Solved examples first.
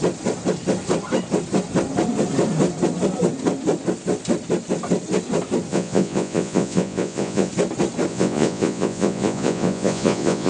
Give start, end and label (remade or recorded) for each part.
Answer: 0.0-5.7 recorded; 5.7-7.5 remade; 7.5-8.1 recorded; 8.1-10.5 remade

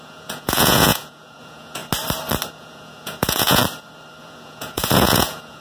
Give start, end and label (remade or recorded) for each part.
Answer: 0.0-1.8 remade; 1.8-2.5 recorded; 2.5-3.6 remade; 3.6-4.2 recorded; 4.2-5.6 remade